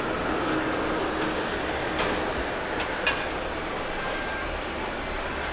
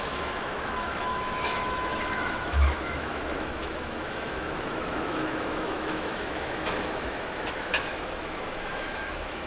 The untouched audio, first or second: first